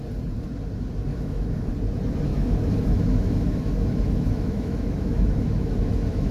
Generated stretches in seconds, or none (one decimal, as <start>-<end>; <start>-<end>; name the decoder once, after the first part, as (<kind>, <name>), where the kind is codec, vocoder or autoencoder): 1.1-1.7 (autoencoder, DAC-VAE); 2.3-6.3